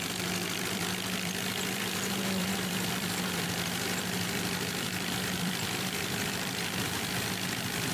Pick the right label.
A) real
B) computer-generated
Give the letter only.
B